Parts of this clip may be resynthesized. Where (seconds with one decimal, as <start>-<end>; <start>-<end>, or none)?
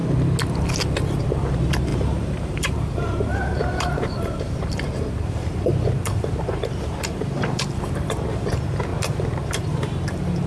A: 1.2-10.5